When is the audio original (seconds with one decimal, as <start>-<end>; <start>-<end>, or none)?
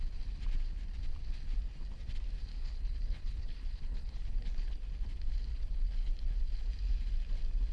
0.0-2.5; 4.8-5.5; 6.4-7.7